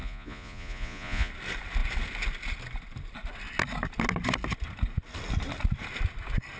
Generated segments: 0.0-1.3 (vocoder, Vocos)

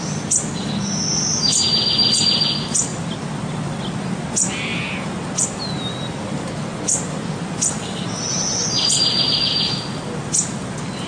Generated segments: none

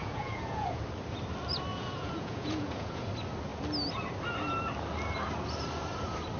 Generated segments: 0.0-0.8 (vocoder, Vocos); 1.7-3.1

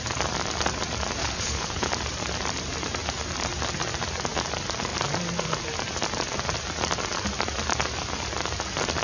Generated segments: 1.2-1.9 (codec, HILCodec)

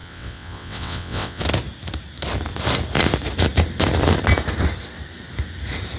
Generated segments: 0.0-1.4 (vocoder, WaveNeXt)

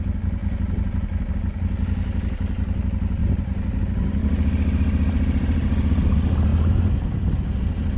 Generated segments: 3.2-3.8 (vocoder, BigVGAN v2); 4.2-5.9